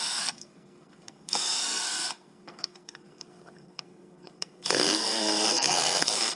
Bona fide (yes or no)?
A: no